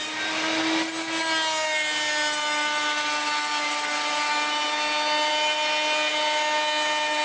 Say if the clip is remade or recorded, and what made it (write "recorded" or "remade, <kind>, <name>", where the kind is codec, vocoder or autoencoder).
recorded